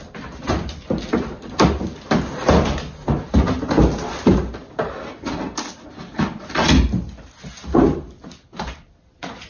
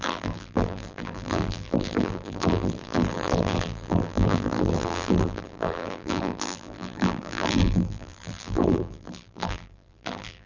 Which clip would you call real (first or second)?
first